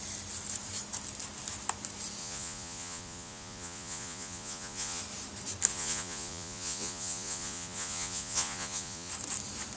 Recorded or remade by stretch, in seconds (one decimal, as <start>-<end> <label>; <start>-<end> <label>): 0.0-2.2 recorded; 2.2-5.0 remade; 5.0-5.7 recorded; 5.7-9.1 remade; 9.1-9.8 recorded